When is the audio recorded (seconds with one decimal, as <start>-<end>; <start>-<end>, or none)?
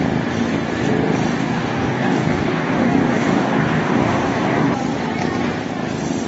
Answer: 0.0-1.4; 4.7-6.3